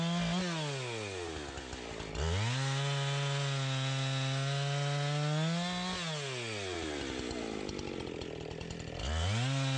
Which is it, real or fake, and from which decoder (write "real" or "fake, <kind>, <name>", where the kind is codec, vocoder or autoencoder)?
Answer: real